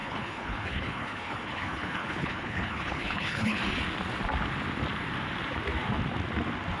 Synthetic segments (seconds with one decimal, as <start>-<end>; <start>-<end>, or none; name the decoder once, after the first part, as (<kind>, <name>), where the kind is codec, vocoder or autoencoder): 0.0-3.6 (codec, HILCodec)